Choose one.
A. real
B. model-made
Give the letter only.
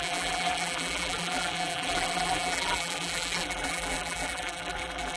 B